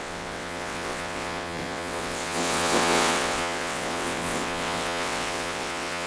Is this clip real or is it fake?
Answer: fake